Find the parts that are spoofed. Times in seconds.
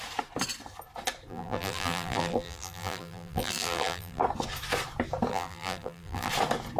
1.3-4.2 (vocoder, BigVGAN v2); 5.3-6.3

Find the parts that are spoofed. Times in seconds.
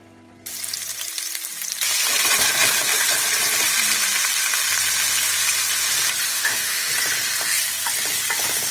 6.3-6.9 (autoencoder, DAC-VAE)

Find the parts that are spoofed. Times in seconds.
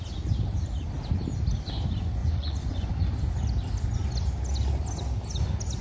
2.2-2.9 (vocoder, Vocos)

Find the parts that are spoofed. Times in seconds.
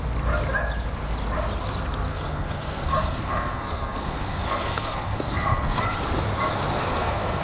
2.1-5.8 (codec, SNAC); 6.8-7.4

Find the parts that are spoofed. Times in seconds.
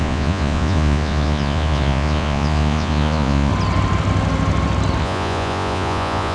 0.0-3.5 (vocoder, Vocos); 5.0-6.3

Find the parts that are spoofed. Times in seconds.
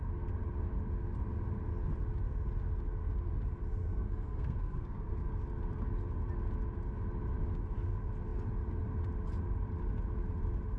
3.8-5.3 (codec, SNAC)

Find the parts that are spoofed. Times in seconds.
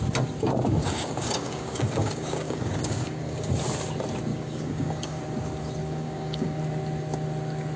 0.8-3.5 (codec, DAC); 4.3-5.2; 5.8-6.6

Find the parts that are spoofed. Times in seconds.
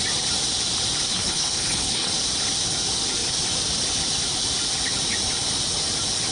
1.1-2.1 (codec, HILCodec)